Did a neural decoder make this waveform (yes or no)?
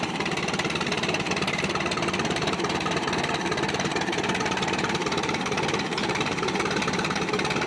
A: yes